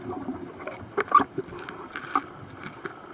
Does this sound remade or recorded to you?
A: recorded